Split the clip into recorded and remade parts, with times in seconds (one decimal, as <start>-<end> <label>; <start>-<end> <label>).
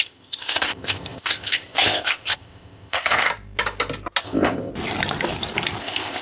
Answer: 0.0-3.3 remade; 3.3-4.2 recorded; 4.2-4.7 remade; 4.7-5.8 recorded; 5.8-6.2 remade